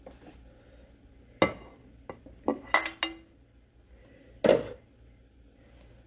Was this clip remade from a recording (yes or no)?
no